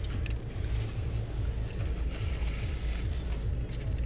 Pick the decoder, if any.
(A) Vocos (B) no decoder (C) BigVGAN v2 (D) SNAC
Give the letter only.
B